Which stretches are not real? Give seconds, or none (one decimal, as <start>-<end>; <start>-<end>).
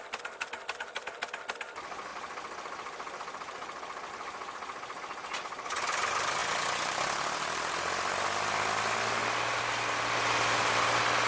none